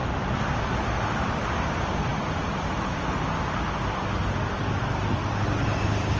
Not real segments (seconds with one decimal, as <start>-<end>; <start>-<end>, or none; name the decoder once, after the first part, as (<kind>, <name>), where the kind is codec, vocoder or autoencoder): none